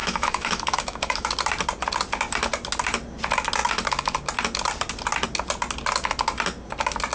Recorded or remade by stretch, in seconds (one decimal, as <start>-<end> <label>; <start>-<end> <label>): 0.0-1.3 remade; 1.3-7.1 recorded